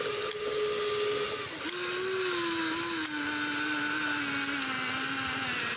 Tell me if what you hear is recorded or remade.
recorded